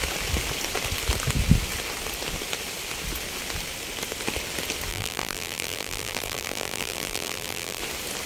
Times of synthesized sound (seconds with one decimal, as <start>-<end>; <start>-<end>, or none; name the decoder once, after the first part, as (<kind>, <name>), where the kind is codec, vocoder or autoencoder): 4.9-7.8 (vocoder, BigVGAN v2)